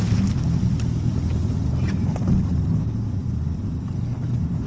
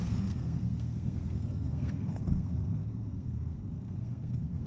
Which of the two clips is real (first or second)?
first